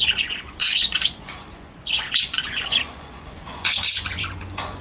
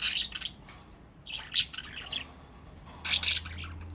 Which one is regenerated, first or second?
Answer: first